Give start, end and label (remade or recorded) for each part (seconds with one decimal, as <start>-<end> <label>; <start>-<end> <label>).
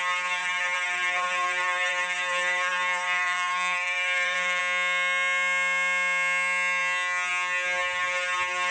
0.0-0.4 recorded; 0.4-4.6 remade; 4.6-8.7 recorded